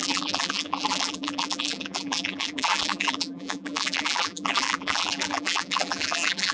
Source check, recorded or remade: remade